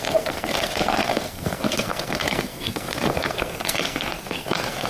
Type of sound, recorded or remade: remade